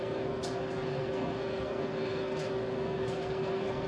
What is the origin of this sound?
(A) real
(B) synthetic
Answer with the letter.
B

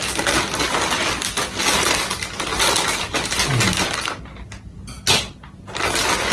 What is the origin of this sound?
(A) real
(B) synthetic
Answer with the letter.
A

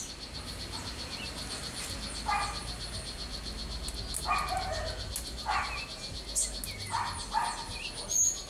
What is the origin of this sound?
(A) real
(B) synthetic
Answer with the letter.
A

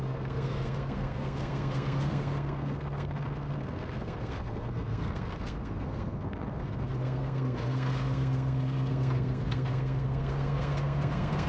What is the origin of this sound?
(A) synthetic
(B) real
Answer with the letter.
A